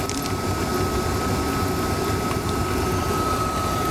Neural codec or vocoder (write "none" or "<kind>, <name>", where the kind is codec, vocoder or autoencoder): none